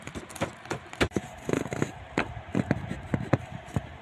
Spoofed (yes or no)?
no